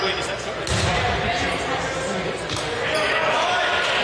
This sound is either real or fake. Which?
real